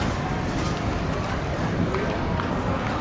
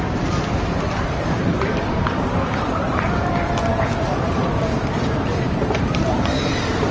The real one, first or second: first